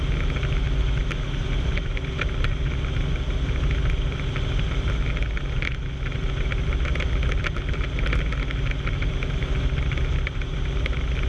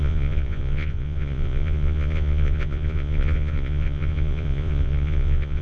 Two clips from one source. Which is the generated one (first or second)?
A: second